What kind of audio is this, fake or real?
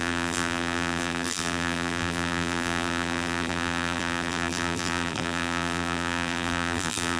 fake